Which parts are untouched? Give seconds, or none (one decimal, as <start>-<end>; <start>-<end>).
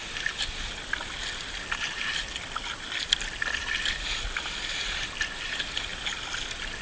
0.0-6.8